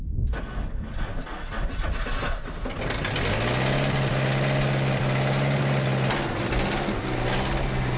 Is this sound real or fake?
real